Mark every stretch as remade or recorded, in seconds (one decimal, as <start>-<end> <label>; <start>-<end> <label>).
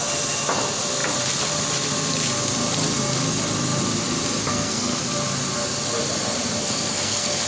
0.0-4.5 recorded; 4.5-5.0 remade; 5.0-6.6 recorded; 6.6-7.5 remade